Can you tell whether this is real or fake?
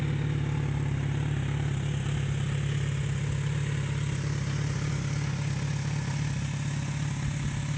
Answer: real